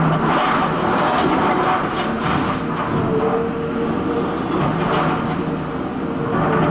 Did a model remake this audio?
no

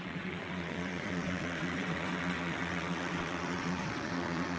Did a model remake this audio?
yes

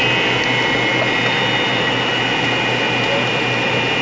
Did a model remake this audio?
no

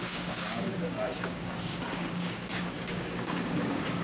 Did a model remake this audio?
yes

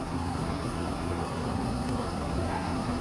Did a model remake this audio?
yes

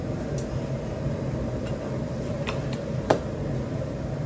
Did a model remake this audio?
yes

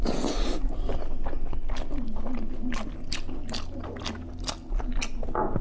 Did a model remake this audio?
no